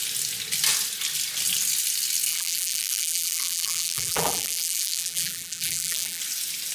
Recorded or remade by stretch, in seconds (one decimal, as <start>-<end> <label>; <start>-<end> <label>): 0.0-2.3 recorded; 2.3-6.2 remade; 6.2-6.7 recorded